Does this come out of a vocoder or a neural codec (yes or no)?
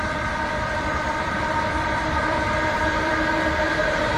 yes